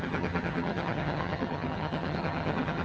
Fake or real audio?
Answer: fake